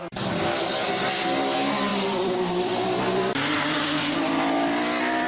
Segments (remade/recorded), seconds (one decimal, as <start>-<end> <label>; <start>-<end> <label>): 0.0-1.9 recorded; 1.9-5.3 remade